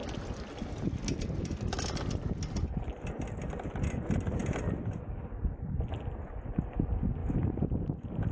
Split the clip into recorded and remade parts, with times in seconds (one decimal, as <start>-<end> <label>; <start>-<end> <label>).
0.0-4.4 recorded; 4.4-5.5 remade; 5.5-8.3 recorded